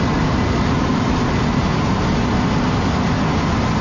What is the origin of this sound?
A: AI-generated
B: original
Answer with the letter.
B